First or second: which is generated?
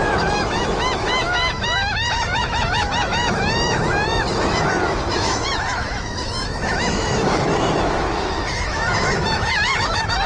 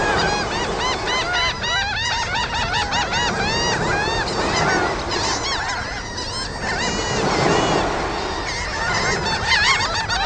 first